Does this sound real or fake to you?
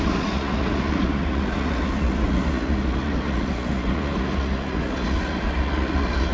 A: fake